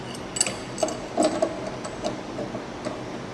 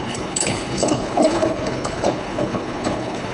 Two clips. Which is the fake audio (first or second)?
second